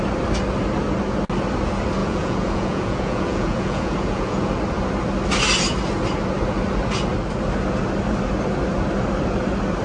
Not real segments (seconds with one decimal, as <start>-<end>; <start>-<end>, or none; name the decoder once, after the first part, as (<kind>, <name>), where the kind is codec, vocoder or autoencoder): 2.0-4.5 (vocoder, Vocos)